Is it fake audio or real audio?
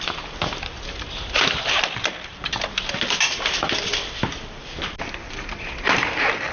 fake